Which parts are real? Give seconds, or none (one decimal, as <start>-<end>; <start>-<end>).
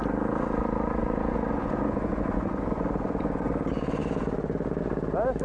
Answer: 0.0-1.0; 3.5-5.4